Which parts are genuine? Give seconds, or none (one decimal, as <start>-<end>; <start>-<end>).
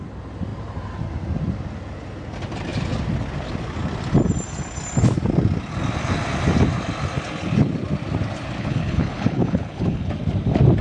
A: 0.0-8.6; 10.1-10.8